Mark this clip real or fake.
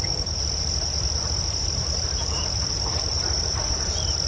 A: fake